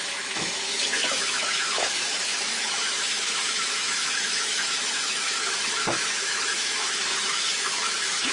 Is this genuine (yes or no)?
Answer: no